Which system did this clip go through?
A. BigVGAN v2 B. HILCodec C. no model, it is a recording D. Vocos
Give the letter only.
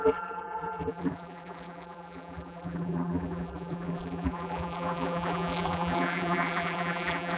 A